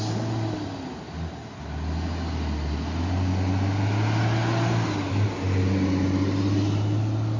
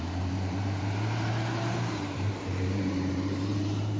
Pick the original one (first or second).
first